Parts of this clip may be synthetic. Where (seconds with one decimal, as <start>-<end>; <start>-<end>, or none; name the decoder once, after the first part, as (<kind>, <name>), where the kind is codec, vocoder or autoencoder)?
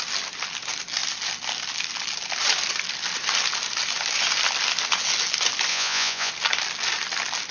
5.7-6.3 (vocoder, Vocos)